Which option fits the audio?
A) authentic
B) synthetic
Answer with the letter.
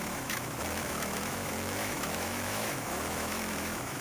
B